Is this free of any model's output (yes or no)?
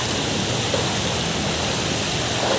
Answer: yes